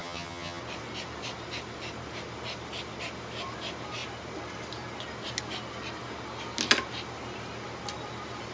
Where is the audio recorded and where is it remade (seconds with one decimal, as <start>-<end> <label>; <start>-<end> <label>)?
0.0-0.6 remade; 0.6-8.5 recorded

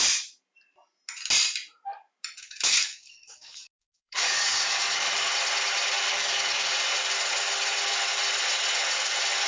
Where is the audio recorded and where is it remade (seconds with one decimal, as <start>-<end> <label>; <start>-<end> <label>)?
0.0-2.4 recorded; 2.4-5.3 remade; 5.3-6.1 recorded; 6.1-6.7 remade; 6.7-9.5 recorded

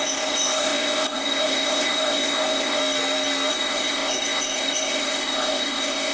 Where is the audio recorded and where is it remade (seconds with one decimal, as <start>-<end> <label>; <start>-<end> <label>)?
0.0-2.8 remade; 2.8-3.5 recorded; 3.5-6.1 remade